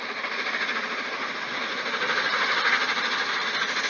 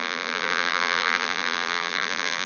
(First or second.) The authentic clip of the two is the first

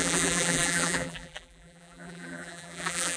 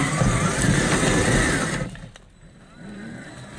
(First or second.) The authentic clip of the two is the second